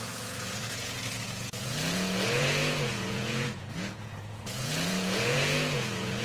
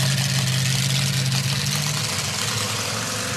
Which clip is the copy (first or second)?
first